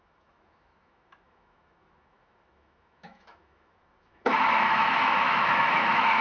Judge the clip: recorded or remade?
remade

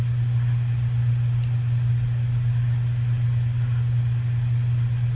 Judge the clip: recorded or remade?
recorded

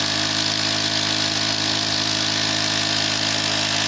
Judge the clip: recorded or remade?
recorded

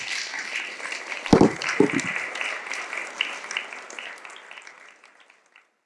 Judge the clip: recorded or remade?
recorded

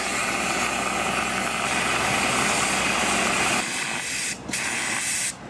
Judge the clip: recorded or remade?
recorded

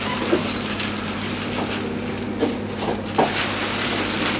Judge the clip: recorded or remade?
recorded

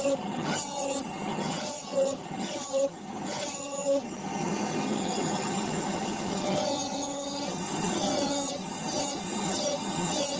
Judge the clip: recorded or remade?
remade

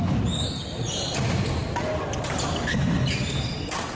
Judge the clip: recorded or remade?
recorded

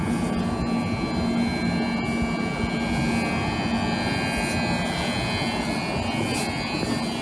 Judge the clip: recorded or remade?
recorded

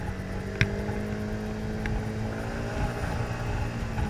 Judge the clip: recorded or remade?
recorded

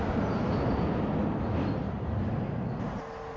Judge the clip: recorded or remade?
recorded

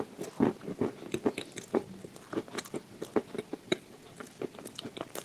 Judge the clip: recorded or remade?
recorded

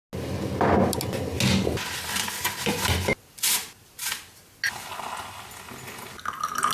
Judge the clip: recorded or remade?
recorded